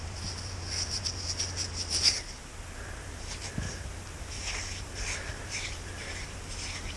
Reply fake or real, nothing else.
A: real